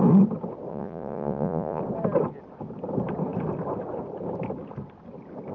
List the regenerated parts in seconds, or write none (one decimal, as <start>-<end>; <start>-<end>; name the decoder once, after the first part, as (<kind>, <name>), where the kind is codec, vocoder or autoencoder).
0.7-1.8 (vocoder, Vocos)